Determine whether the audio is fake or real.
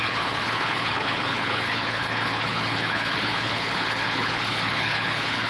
fake